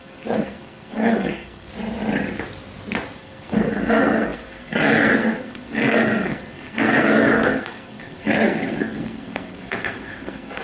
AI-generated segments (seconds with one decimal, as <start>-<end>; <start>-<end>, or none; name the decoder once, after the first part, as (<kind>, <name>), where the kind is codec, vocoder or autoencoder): 0.0-1.7 (codec, SNAC); 3.2-10.6